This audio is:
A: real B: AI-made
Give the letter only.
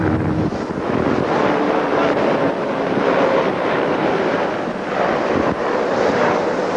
B